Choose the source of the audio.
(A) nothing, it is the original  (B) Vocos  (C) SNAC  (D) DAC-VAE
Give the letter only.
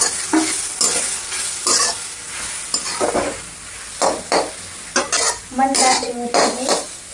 A